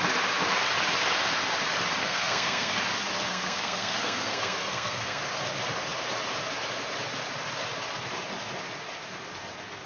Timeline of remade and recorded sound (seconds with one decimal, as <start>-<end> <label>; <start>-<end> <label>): 0.0-2.0 recorded; 2.0-2.8 remade; 2.8-3.3 recorded; 3.3-5.2 remade; 5.2-9.9 recorded